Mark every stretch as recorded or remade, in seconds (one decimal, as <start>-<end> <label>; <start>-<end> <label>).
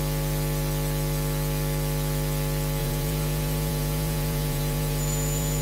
0.0-2.8 recorded; 2.8-5.6 remade